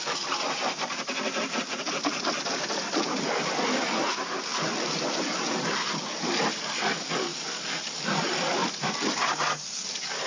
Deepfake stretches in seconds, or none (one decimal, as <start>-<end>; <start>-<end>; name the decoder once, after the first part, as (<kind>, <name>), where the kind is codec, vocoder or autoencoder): 7.3-7.9 (vocoder, BigVGAN v2)